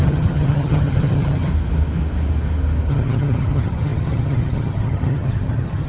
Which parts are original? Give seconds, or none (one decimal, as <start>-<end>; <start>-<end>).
1.5-2.9